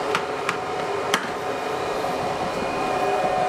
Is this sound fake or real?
fake